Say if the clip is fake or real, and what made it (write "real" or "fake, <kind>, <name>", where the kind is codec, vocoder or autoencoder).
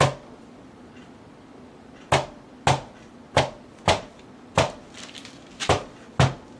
real